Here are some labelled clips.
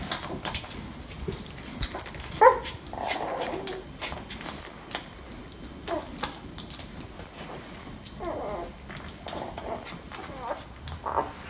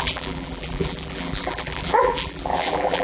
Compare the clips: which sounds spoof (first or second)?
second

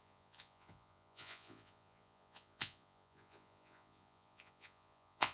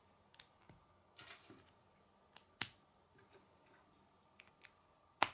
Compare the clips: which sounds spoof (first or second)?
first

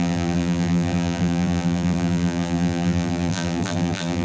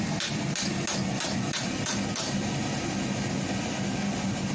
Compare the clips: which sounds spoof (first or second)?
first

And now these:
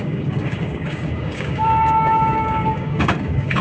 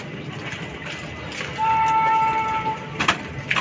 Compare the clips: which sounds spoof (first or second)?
first